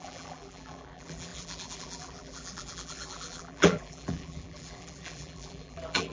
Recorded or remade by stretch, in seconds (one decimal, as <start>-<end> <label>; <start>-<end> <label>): 0.0-6.1 remade